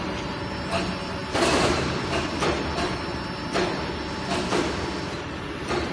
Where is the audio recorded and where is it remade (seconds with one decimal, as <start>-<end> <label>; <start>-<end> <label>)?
0.0-5.9 recorded